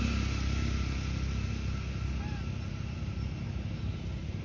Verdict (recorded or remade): recorded